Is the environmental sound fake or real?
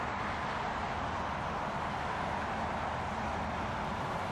real